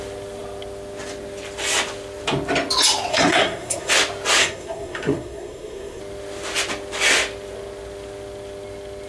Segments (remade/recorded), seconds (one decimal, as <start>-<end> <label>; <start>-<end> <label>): 0.0-3.1 recorded; 3.1-3.9 remade; 3.9-4.4 recorded; 4.4-6.0 remade; 6.0-9.1 recorded